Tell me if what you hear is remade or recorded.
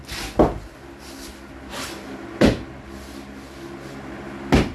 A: recorded